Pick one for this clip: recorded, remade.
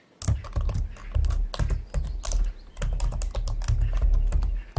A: recorded